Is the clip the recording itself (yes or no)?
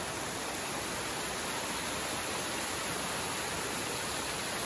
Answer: yes